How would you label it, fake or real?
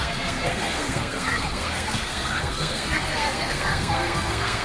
fake